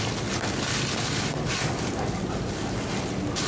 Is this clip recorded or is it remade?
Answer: recorded